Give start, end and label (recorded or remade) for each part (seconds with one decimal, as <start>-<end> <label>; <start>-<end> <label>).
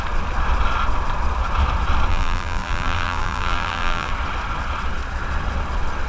0.0-2.1 recorded; 2.1-4.1 remade; 4.1-6.1 recorded